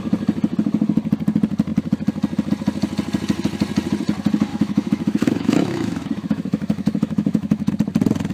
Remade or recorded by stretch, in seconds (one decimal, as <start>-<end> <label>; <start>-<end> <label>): 0.0-4.5 recorded; 4.5-7.7 remade; 7.7-8.3 recorded

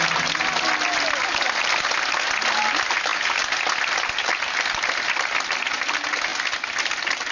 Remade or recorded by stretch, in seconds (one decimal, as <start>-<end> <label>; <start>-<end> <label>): 0.0-7.3 recorded

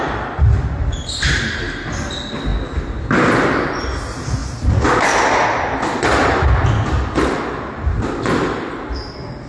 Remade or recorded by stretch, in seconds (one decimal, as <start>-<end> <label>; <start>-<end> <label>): 0.0-9.5 recorded

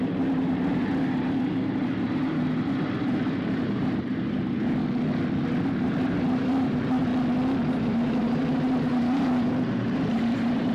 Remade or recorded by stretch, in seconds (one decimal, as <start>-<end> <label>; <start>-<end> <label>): 0.0-4.8 remade; 4.8-5.7 recorded; 5.7-7.1 remade; 7.1-7.7 recorded; 7.7-10.7 remade